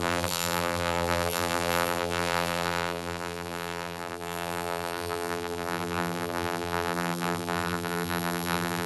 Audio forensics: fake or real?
fake